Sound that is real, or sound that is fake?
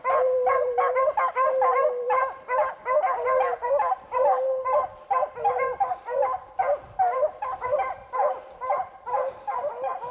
real